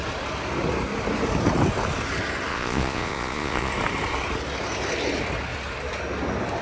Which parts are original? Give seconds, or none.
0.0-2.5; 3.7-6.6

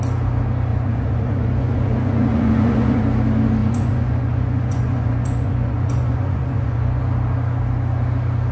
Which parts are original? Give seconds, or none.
0.0-0.7; 3.0-3.6; 7.0-8.5

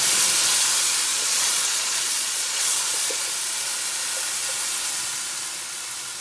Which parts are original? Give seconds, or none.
0.0-1.1; 3.3-6.2

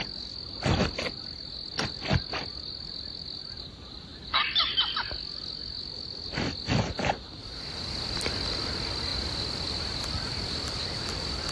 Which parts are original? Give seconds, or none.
0.0-11.5

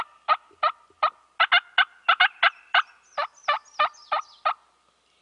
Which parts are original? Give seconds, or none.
0.0-5.2